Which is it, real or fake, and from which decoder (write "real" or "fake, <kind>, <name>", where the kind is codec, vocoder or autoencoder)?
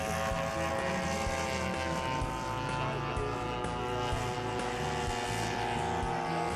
real